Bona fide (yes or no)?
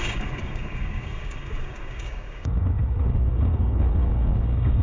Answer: no